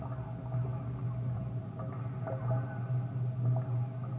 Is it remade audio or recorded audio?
recorded